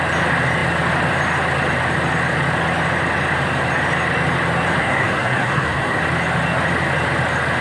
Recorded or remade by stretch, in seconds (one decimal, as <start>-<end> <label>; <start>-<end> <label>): 0.0-4.8 recorded; 4.8-6.0 remade; 6.0-7.6 recorded